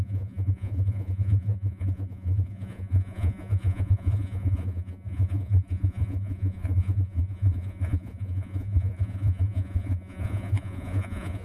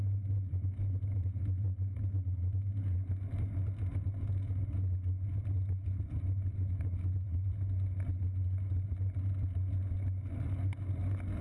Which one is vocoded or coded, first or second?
first